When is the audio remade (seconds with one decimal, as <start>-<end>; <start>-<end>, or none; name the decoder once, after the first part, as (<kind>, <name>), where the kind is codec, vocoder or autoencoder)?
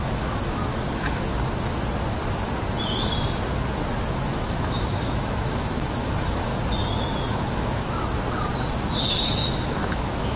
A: 0.0-0.7 (autoencoder, DAC-VAE); 4.2-6.5; 7.3-8.2; 9.4-10.4